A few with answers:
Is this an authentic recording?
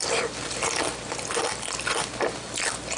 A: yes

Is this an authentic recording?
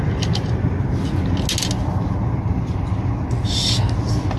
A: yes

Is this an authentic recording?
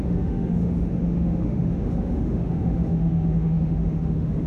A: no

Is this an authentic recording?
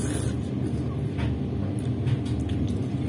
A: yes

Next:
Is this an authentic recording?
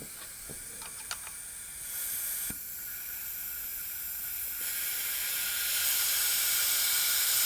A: yes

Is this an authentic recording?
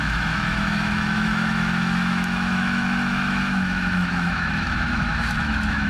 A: no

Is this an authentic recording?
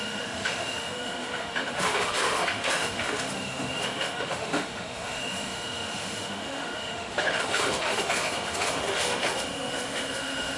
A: no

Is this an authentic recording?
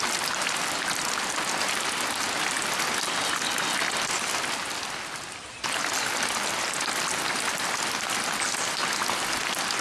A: yes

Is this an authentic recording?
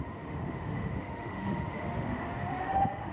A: no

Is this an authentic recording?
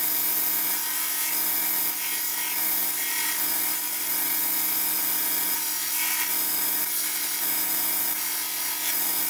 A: yes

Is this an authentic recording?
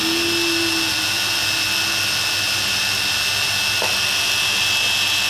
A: yes